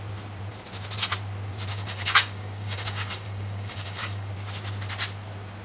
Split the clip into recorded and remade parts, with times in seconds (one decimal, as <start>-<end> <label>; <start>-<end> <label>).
0.0-1.7 recorded; 1.7-4.3 remade; 4.3-5.6 recorded